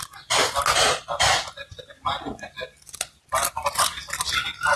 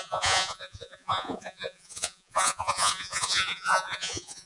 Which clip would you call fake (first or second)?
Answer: second